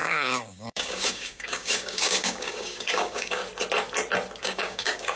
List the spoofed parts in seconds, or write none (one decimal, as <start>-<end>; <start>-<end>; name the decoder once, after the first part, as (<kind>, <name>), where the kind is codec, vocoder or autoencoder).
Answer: 0.0-3.4 (codec, DAC); 4.4-5.2